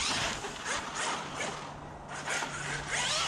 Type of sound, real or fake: real